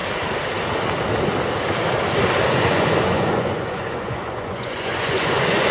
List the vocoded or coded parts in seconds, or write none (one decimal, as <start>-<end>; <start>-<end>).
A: 2.5-5.7